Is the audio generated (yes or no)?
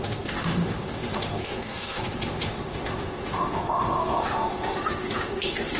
yes